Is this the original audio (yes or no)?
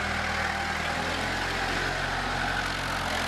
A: yes